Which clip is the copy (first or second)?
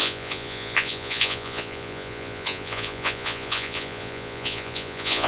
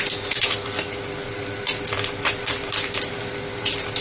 first